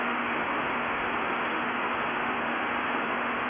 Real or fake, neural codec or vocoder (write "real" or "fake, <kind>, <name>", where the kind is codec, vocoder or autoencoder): fake, autoencoder, DAC-VAE